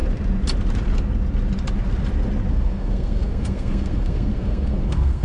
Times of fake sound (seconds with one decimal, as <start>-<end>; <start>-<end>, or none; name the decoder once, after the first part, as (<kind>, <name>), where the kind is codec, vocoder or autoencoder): 2.5-5.2 (codec, SNAC)